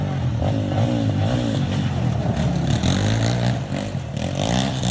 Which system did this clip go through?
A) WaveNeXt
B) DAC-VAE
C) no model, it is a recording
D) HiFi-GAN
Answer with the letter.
C